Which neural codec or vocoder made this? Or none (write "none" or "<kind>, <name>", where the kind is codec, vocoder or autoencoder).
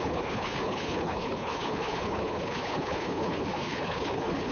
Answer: codec, HILCodec